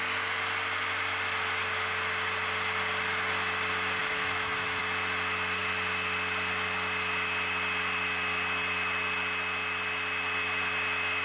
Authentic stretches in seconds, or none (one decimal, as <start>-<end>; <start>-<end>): 0.0-4.0; 4.8-11.2